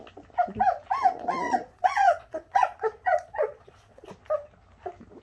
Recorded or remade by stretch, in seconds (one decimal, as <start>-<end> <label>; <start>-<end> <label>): 0.0-1.0 recorded; 1.0-4.1 remade; 4.1-5.2 recorded